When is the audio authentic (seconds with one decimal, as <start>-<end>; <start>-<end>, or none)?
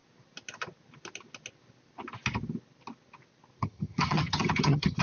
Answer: 0.0-3.6